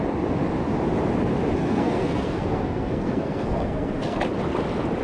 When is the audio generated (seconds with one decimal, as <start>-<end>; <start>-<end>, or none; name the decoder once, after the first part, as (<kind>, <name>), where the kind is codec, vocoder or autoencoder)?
1.6-4.2 (codec, SNAC)